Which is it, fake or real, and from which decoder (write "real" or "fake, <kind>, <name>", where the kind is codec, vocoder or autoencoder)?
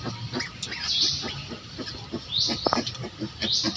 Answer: real